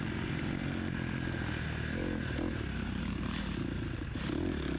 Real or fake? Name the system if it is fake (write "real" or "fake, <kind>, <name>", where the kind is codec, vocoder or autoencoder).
real